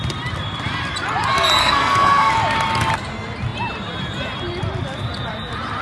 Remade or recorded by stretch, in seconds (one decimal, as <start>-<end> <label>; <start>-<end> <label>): 0.0-1.6 recorded; 1.6-2.3 remade; 2.3-5.8 recorded